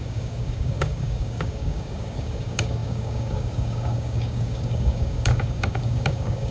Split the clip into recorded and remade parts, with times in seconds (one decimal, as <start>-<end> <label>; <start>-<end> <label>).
0.0-6.5 remade

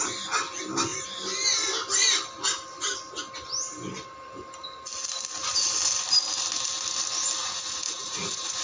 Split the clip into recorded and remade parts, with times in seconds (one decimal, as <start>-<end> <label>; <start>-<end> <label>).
0.0-7.4 recorded; 7.4-8.6 remade

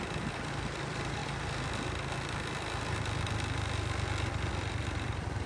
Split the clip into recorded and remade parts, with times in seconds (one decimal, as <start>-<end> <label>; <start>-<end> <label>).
0.0-1.2 remade; 1.2-4.5 recorded; 4.5-5.5 remade

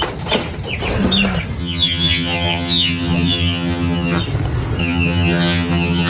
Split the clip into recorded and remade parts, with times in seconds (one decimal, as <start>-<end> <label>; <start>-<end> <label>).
0.0-1.6 recorded; 1.6-4.2 remade; 4.2-4.8 recorded; 4.8-6.1 remade